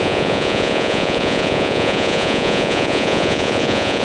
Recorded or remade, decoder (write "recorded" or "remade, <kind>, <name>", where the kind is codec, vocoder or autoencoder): remade, vocoder, Vocos